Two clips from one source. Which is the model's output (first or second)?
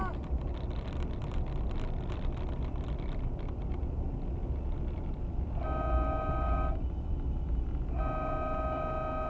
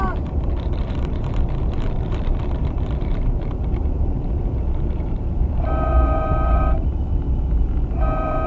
second